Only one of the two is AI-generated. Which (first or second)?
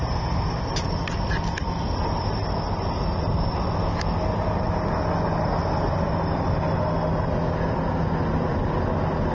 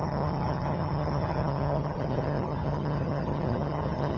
second